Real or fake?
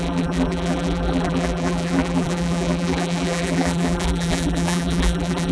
fake